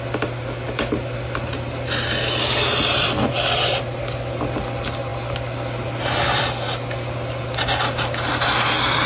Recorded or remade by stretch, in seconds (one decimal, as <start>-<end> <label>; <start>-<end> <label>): 0.0-9.1 recorded

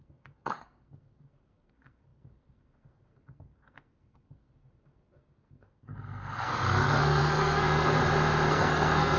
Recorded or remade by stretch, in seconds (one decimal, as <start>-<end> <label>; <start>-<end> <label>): 0.0-8.0 remade; 8.0-8.5 recorded; 8.5-9.2 remade

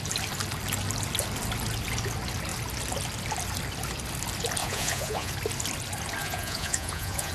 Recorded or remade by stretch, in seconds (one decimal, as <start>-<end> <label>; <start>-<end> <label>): 0.0-4.6 recorded; 4.6-5.3 remade; 5.3-6.2 recorded; 6.2-7.3 remade